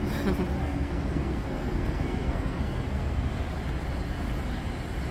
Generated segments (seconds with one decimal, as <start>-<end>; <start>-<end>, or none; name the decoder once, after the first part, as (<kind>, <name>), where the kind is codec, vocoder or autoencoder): 0.6-3.4 (codec, SNAC)